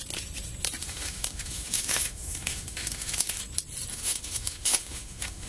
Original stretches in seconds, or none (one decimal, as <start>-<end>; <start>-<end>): 0.0-0.8; 3.4-3.9